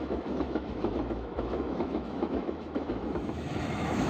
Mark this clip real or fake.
fake